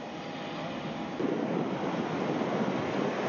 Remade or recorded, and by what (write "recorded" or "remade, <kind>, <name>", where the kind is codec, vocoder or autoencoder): recorded